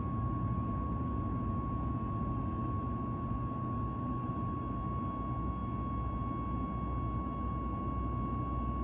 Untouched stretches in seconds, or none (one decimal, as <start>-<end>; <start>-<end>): 0.0-8.8